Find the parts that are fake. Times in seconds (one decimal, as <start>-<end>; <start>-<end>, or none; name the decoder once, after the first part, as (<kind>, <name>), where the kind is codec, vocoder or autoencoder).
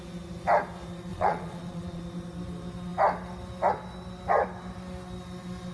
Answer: 1.1-2.0 (vocoder, Vocos)